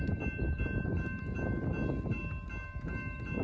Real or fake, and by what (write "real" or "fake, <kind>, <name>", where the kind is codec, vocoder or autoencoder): real